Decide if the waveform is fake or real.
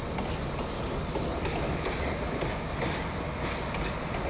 real